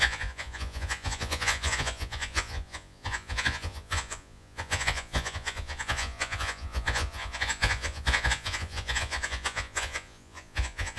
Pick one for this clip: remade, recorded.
remade